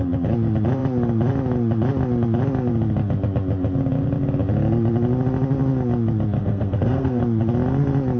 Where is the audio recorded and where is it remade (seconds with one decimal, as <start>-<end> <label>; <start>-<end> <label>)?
0.0-6.4 recorded; 6.4-7.2 remade; 7.2-8.2 recorded